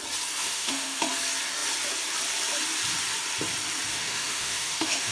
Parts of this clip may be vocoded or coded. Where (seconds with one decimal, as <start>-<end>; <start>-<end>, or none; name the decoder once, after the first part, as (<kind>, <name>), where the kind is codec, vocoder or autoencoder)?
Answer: 0.4-1.1 (autoencoder, DAC-VAE); 3.9-5.1